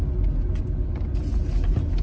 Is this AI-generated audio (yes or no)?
no